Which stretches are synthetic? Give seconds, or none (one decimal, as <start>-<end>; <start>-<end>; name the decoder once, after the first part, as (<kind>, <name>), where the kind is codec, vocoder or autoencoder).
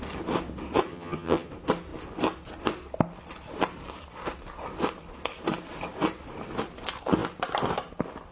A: 0.9-1.5 (vocoder, HiFi-GAN)